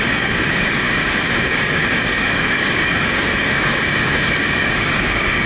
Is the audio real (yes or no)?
no